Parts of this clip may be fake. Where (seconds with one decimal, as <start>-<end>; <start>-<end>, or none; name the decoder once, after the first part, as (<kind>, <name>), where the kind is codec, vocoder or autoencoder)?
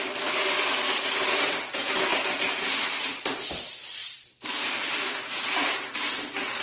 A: 2.1-2.7 (vocoder, BigVGAN v2); 4.0-5.2